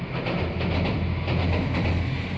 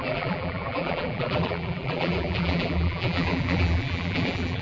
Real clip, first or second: first